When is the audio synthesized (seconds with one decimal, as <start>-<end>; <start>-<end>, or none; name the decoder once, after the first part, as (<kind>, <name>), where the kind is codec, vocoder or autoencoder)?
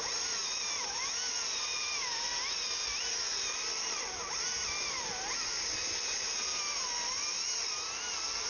none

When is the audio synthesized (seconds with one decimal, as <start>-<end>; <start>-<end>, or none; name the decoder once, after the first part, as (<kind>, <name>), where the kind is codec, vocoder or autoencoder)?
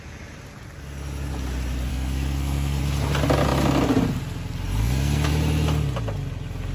1.9-2.8 (codec, SNAC); 4.8-5.3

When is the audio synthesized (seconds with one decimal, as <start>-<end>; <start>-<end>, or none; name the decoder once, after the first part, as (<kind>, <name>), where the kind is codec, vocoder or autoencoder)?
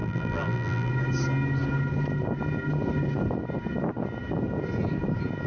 0.0-0.9 (vocoder, BigVGAN v2)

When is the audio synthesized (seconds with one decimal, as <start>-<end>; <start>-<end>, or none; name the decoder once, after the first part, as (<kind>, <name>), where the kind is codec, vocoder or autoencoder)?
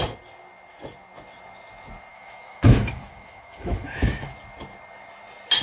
2.1-4.3 (autoencoder, DAC-VAE)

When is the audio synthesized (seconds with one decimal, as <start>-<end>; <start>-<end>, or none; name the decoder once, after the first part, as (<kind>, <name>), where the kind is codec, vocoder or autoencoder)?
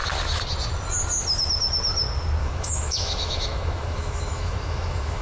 2.4-5.2 (autoencoder, DAC-VAE)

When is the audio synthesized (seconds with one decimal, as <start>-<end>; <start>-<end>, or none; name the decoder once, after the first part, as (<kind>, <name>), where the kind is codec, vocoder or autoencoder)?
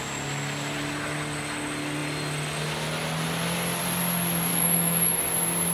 4.5-5.2 (autoencoder, DAC-VAE)